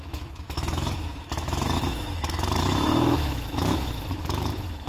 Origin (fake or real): fake